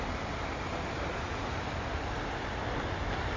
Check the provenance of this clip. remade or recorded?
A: recorded